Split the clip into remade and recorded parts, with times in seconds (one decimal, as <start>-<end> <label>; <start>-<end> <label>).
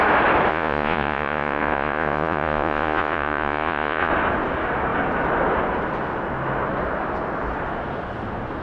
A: 0.0-0.5 recorded; 0.5-4.1 remade; 4.1-8.6 recorded